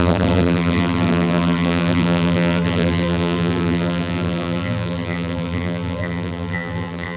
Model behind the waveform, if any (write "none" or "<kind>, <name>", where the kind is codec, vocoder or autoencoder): vocoder, BigVGAN v2